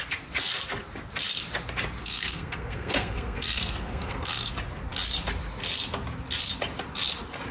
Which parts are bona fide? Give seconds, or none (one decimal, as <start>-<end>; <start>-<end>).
0.0-2.0; 4.5-7.5